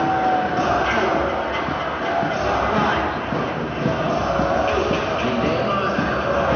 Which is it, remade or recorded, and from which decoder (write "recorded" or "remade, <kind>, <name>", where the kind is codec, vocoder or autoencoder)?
recorded